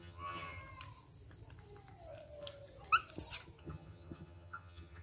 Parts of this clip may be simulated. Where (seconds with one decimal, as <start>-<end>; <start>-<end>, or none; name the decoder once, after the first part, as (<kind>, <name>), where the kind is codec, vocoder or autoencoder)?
0.0-0.6 (vocoder, HiFi-GAN); 3.6-5.0